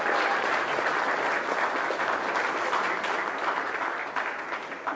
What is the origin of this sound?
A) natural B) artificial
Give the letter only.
A